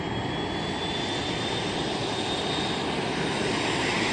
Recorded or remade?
recorded